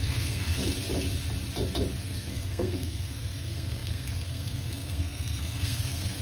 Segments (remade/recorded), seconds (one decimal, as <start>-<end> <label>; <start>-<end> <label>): 0.0-0.6 remade; 0.6-2.0 recorded; 2.0-6.2 remade